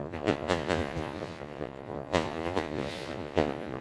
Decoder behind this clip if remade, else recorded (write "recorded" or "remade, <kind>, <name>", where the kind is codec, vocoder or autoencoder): remade, vocoder, Vocos